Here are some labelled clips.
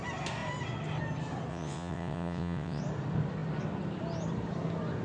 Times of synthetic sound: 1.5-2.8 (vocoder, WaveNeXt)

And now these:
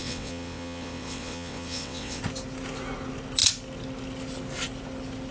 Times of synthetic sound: 0.0-2.2 (vocoder, WaveNeXt)